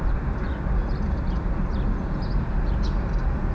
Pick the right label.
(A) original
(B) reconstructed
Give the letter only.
A